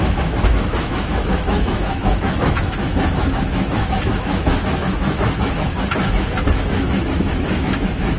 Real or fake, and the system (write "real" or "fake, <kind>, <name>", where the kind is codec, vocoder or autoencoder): fake, autoencoder, DAC-VAE